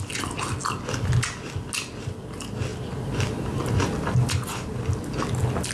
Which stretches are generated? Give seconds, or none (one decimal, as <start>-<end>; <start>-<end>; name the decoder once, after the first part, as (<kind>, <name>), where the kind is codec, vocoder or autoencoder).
none